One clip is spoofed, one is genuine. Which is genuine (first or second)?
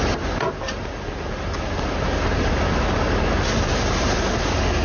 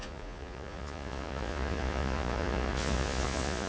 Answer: first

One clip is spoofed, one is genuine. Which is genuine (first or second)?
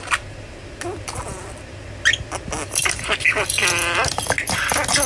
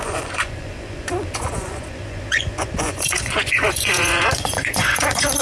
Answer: first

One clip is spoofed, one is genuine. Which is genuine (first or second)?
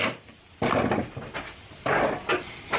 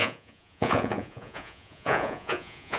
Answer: first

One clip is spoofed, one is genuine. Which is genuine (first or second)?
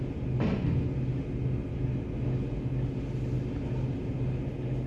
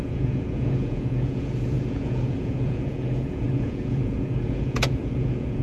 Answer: first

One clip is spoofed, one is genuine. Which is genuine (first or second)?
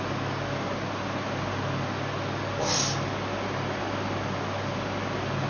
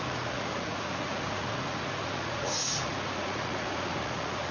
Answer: first